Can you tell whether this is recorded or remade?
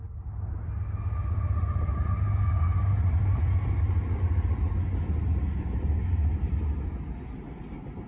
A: recorded